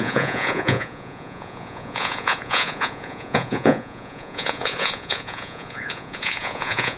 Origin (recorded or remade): remade